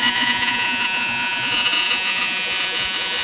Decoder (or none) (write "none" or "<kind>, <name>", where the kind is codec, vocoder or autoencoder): vocoder, Vocos